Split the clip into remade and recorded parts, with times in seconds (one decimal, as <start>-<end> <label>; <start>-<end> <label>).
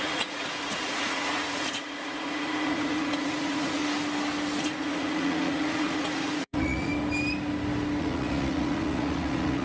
0.0-3.8 remade; 3.8-4.6 recorded; 4.6-6.9 remade; 6.9-8.0 recorded; 8.0-9.6 remade